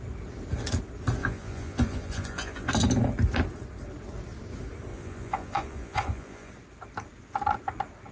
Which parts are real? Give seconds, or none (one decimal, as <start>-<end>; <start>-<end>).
0.0-1.2; 2.7-4.9; 6.5-8.1